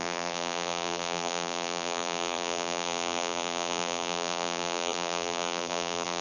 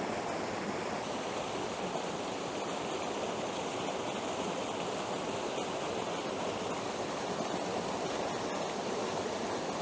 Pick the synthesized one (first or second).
first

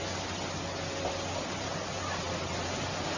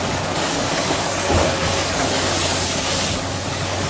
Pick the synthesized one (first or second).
second